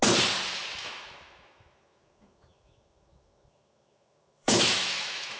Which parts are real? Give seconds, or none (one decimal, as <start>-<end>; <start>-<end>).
0.0-0.8